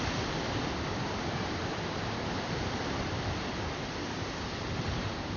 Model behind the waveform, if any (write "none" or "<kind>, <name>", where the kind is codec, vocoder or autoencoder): none